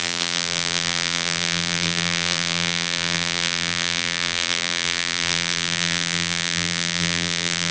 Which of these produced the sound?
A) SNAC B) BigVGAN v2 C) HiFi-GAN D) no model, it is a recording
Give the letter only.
B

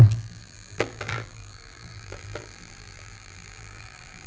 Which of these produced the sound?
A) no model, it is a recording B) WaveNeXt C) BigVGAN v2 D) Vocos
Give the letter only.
C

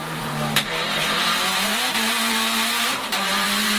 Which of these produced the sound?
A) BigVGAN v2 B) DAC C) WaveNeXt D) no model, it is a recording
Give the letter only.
A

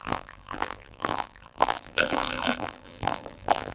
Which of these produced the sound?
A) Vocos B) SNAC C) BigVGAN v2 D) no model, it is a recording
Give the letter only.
C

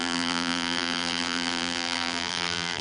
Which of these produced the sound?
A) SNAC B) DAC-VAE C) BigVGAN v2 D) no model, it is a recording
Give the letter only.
C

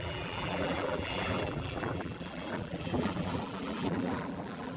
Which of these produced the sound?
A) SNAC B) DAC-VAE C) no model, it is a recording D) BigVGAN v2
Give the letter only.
D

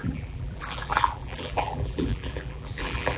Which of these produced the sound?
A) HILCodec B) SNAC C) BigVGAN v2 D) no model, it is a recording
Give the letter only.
C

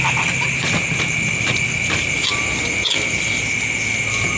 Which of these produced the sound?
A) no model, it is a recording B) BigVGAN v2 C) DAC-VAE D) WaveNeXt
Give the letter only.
A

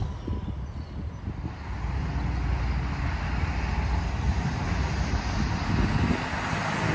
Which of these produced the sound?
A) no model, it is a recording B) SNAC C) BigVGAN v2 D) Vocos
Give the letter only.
A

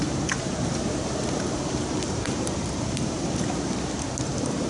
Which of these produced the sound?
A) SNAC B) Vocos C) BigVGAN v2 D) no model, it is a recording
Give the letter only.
C